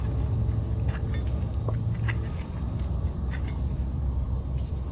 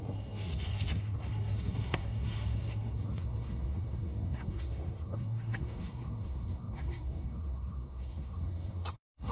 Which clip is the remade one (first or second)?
second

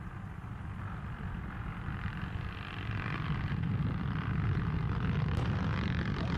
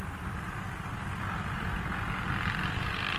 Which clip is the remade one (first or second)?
first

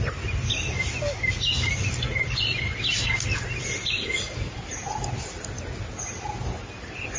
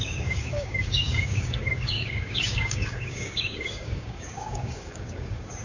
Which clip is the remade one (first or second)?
second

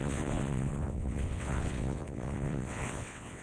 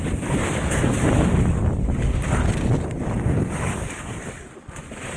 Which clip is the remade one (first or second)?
first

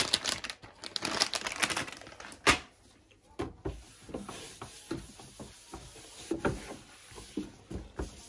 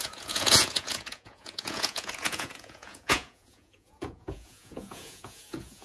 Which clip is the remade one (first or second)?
second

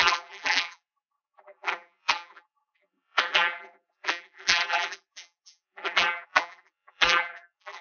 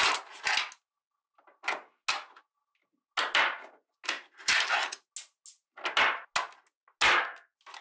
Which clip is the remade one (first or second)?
first